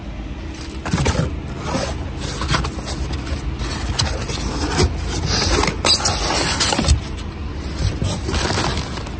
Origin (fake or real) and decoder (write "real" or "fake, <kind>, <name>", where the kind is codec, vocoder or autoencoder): real